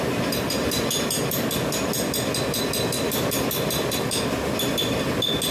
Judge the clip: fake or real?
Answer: real